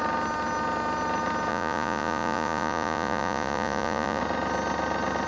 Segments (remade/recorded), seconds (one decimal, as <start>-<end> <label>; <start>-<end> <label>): 0.0-1.5 recorded; 1.5-4.2 remade; 4.2-5.3 recorded